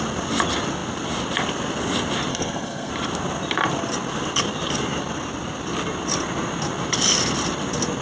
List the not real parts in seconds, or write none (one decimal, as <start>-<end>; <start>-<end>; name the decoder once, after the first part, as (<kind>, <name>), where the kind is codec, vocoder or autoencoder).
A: 2.3-2.9 (codec, SNAC)